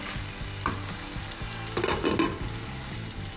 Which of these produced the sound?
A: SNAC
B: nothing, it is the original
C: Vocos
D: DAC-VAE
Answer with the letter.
B